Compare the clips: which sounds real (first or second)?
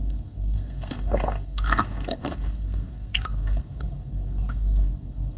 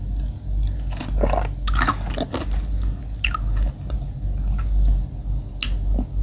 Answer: second